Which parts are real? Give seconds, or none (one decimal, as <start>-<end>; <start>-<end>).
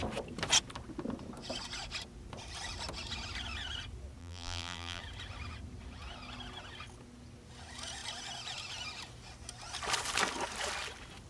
0.0-4.2; 5.0-11.3